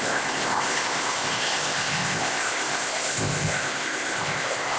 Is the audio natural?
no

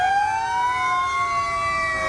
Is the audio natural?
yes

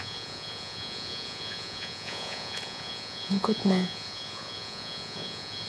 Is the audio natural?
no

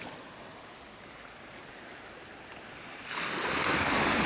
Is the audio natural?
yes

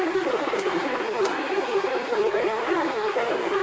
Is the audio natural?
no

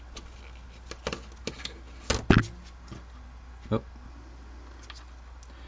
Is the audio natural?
yes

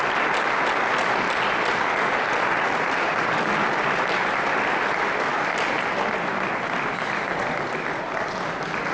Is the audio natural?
yes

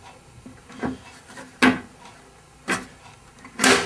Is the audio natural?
yes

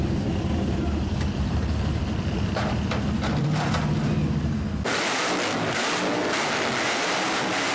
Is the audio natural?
yes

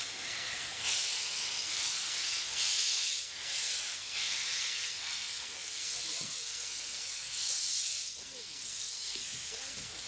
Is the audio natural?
no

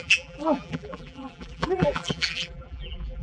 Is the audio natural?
no